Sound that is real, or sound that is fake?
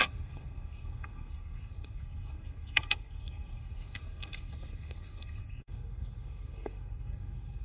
fake